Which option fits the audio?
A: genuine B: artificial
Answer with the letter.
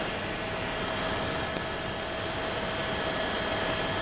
A